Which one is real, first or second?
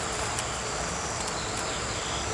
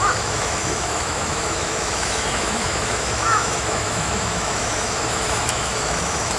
first